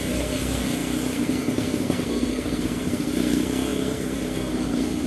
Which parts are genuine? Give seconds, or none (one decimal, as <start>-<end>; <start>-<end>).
none